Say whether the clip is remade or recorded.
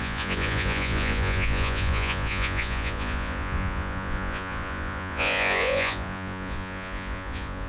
remade